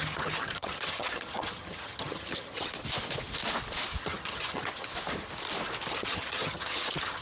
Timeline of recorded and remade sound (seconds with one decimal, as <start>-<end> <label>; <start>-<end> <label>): 0.0-2.7 remade; 2.7-4.0 recorded; 4.0-4.9 remade; 4.9-5.9 recorded; 5.9-7.2 remade